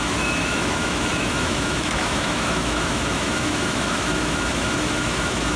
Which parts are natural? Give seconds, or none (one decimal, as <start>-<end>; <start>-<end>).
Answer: none